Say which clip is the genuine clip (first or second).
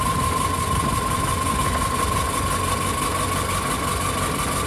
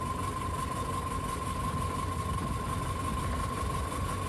first